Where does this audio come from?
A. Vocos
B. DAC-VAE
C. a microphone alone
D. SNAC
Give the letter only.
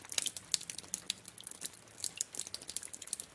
C